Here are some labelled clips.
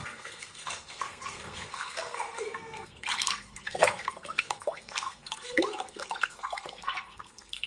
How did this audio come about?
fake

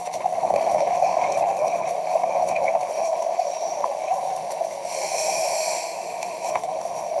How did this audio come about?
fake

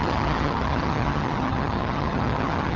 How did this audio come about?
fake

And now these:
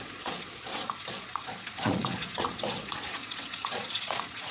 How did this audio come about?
fake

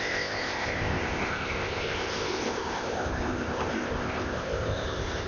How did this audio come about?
fake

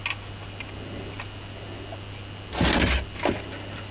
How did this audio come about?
real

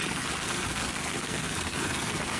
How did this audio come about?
fake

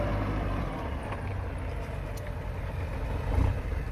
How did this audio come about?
fake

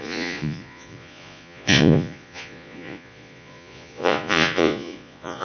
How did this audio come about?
fake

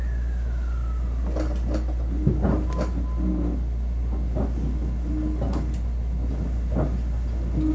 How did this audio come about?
real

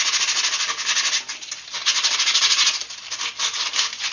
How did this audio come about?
real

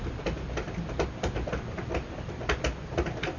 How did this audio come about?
real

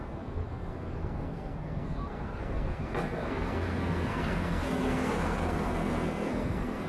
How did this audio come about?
fake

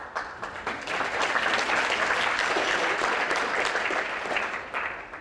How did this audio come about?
real